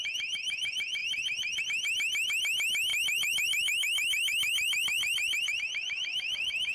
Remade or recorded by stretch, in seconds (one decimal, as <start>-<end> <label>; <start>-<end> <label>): 0.0-1.0 recorded; 1.0-1.6 remade; 1.6-2.9 recorded; 2.9-5.6 remade; 5.6-6.7 recorded